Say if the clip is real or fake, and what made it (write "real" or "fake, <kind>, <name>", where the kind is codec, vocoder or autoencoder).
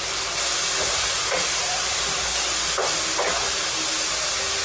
real